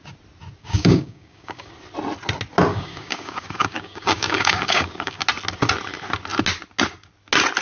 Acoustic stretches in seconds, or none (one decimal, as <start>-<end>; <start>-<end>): 0.0-0.6; 1.7-2.7; 5.2-7.6